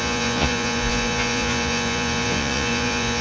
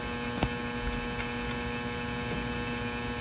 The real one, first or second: second